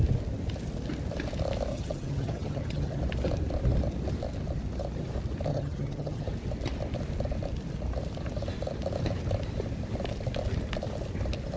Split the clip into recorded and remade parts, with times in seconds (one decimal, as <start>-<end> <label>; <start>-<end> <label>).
0.0-1.7 recorded; 1.7-3.0 remade; 3.0-5.5 recorded; 5.5-6.3 remade; 6.3-11.6 recorded